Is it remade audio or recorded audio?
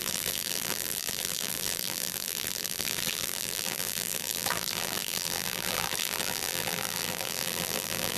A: remade